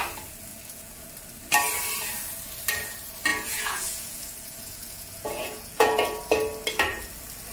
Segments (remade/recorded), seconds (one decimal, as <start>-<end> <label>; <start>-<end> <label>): 0.0-0.5 recorded; 0.5-1.1 remade; 1.1-3.3 recorded; 3.3-6.2 remade; 6.2-7.5 recorded

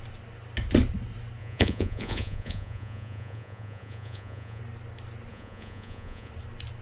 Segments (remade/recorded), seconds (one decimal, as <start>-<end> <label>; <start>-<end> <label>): 0.0-1.4 recorded; 1.4-4.6 remade; 4.6-5.3 recorded; 5.3-6.3 remade; 6.3-6.8 recorded

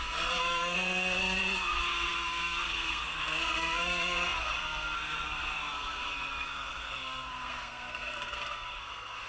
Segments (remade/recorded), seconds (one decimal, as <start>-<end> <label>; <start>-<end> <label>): 0.0-9.3 remade

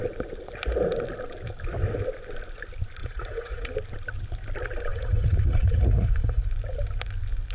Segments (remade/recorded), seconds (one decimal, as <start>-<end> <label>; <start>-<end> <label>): 0.0-3.0 recorded; 3.0-3.7 remade; 3.7-4.9 recorded; 4.9-6.5 remade; 6.5-7.5 recorded

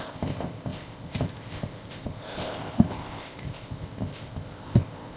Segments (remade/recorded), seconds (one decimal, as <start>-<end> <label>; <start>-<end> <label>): 0.0-5.2 remade

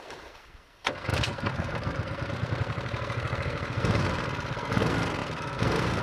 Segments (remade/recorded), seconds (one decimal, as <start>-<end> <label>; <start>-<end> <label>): 0.0-6.0 remade

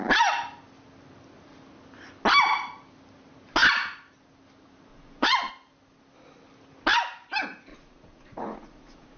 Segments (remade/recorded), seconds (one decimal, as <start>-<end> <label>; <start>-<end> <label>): 0.0-4.9 recorded; 4.9-5.5 remade; 5.5-7.7 recorded; 7.7-9.2 remade